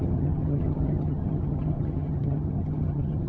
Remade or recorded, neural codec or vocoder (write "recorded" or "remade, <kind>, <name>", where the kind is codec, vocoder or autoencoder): remade, vocoder, HiFi-GAN